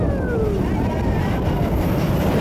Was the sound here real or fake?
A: real